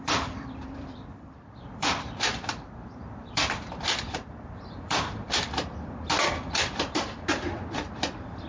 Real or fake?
fake